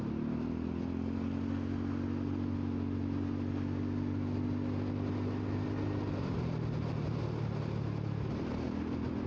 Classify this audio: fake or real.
real